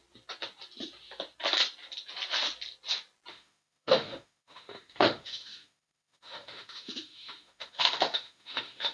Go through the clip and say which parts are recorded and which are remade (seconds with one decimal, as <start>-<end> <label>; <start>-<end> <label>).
0.0-3.3 recorded; 3.3-8.9 remade